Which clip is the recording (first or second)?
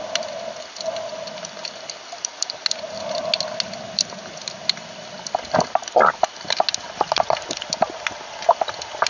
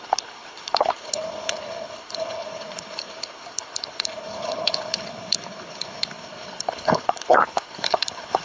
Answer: first